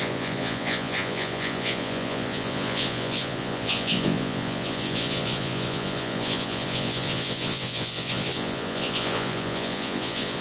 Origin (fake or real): fake